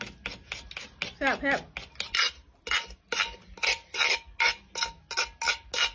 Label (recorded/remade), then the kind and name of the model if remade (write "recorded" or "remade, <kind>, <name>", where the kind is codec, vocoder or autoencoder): recorded